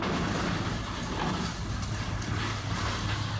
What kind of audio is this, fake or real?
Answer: real